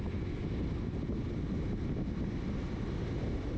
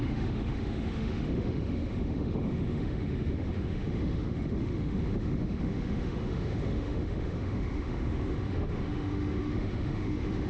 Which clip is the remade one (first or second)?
second